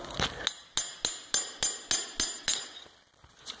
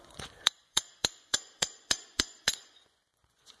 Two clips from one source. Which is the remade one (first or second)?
second